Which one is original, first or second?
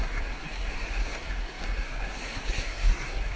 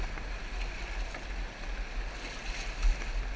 second